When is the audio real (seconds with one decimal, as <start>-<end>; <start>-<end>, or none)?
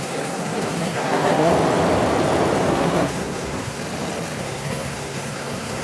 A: 1.5-2.7; 3.8-4.4